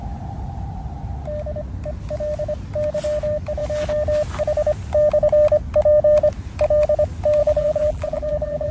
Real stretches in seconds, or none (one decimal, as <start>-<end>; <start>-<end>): 0.0-7.4